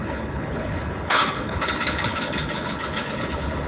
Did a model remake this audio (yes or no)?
yes